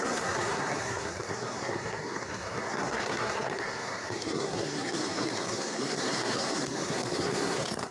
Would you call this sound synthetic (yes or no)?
yes